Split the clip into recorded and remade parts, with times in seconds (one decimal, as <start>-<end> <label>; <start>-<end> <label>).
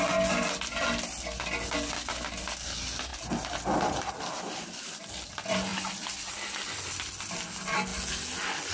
0.0-8.7 recorded